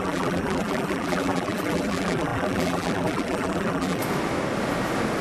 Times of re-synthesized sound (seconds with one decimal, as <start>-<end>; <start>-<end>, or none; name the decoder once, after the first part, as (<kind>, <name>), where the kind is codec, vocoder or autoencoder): 0.0-4.0 (vocoder, BigVGAN v2)